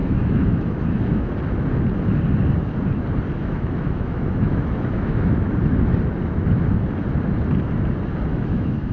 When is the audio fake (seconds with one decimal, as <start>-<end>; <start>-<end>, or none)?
0.0-1.3; 3.4-5.5; 8.3-8.9